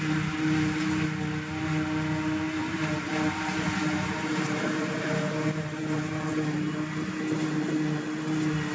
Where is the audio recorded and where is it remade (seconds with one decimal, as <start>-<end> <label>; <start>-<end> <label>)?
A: 0.0-2.6 recorded; 2.6-6.3 remade; 6.3-8.7 recorded